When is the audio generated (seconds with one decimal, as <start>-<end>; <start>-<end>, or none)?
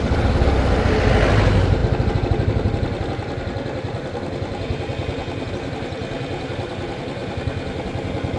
none